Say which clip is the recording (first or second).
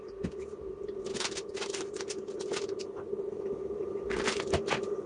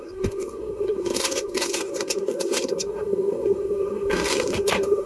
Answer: first